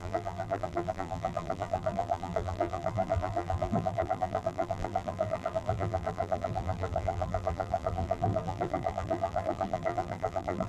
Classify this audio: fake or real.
fake